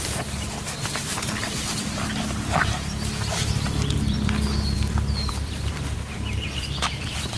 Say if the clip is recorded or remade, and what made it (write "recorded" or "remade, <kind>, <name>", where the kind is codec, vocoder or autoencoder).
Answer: remade, vocoder, BigVGAN v2